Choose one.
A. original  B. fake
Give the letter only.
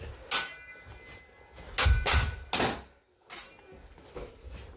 A